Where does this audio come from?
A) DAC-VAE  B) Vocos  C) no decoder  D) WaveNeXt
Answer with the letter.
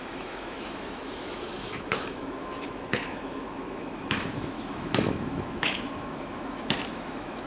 A